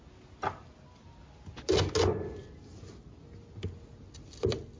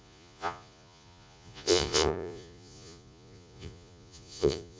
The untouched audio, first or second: first